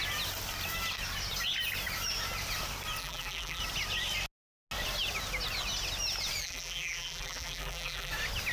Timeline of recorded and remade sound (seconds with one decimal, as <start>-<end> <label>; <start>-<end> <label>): 0.0-3.0 recorded; 3.0-3.6 remade; 3.6-6.4 recorded; 6.4-8.1 remade; 8.1-8.5 recorded

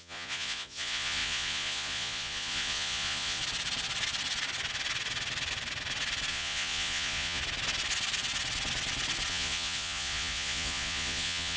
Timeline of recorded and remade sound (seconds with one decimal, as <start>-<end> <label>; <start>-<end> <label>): 0.0-3.4 remade; 3.4-6.3 recorded; 6.3-7.4 remade; 7.4-9.3 recorded; 9.3-11.6 remade